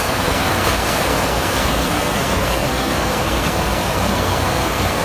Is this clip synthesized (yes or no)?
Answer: yes